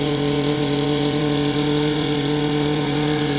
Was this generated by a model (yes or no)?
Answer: yes